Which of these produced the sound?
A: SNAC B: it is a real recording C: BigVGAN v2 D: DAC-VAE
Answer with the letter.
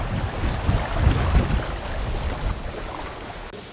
B